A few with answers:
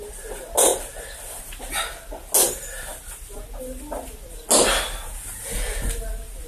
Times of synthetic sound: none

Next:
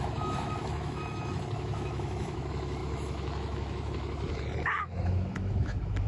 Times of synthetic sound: 0.0-6.1